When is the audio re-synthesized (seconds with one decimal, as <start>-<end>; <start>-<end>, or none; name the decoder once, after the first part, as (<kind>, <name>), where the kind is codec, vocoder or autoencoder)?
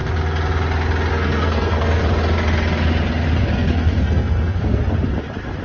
1.1-2.0 (codec, SNAC); 3.4-4.8